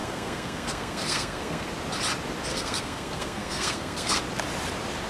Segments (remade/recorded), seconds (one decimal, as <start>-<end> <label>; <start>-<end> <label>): 0.0-1.7 remade; 1.7-2.5 recorded; 2.5-4.2 remade; 4.2-5.1 recorded